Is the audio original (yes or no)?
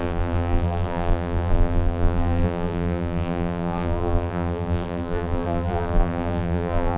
no